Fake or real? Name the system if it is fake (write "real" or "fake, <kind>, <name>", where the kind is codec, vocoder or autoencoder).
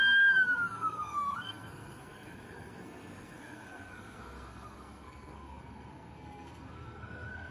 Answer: fake, codec, SNAC